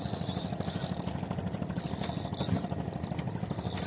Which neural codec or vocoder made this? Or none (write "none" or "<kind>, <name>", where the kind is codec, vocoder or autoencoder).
none